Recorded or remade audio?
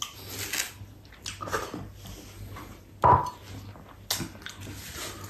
recorded